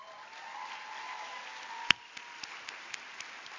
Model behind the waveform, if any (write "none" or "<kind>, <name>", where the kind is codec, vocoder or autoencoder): none